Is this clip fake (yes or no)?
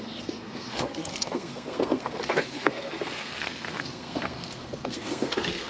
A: yes